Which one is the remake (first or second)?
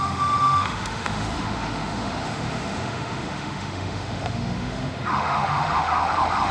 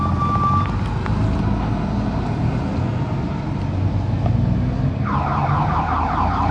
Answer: first